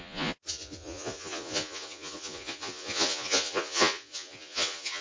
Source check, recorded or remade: remade